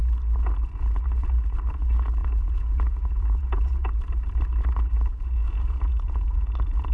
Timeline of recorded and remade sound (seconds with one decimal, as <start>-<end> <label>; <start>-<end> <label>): 0.0-2.2 recorded; 2.2-3.9 remade; 3.9-5.1 recorded; 5.1-6.5 remade; 6.5-6.9 recorded